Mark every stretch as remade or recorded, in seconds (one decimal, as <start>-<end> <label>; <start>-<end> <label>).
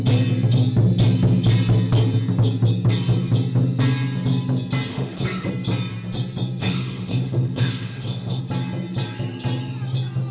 0.0-4.9 recorded; 4.9-5.5 remade; 5.5-6.6 recorded; 6.6-8.4 remade; 8.4-10.3 recorded